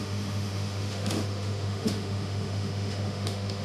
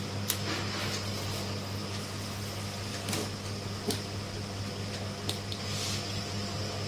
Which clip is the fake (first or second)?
first